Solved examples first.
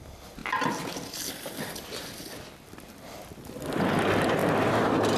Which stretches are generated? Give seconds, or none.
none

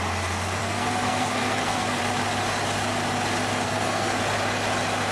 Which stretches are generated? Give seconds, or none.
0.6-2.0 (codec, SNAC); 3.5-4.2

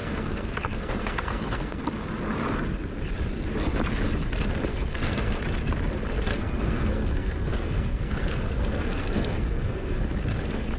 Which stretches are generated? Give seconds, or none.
0.0-1.8 (codec, SNAC); 4.7-5.4; 6.3-10.0

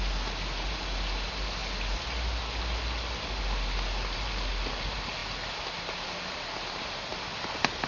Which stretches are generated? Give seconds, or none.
none

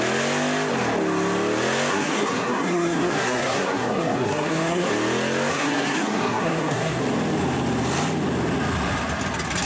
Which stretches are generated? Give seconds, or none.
1.9-4.9 (codec, SNAC); 5.5-7.0

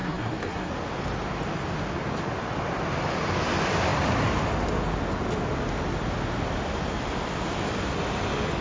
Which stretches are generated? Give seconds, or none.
0.0-0.7 (codec, SNAC)

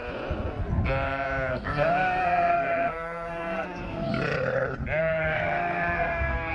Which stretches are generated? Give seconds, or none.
1.5-4.1 (codec, SNAC); 5.0-6.5